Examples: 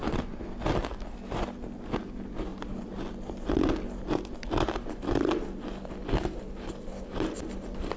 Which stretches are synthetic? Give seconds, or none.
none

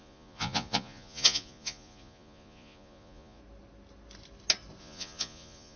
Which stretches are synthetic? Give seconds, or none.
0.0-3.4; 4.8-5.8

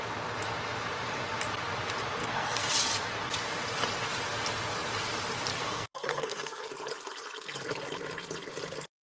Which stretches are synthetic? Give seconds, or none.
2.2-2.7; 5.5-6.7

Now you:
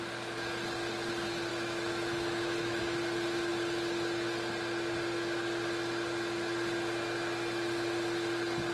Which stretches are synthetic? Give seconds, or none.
1.5-2.8